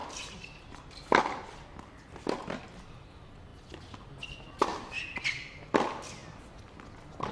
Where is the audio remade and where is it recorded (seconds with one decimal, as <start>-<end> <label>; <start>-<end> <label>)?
0.0-2.2 remade; 2.2-3.5 recorded; 3.5-4.6 remade; 4.6-7.3 recorded